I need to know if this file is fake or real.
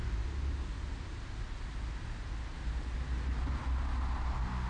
real